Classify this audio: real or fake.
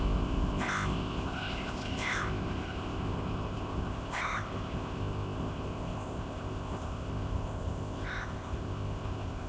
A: fake